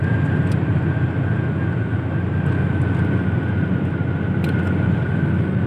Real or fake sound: real